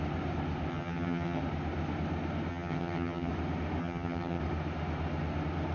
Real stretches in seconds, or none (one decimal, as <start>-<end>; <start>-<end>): 0.0-0.7; 1.4-2.5; 3.3-3.8; 4.4-5.7